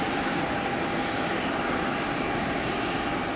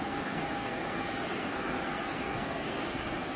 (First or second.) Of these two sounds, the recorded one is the first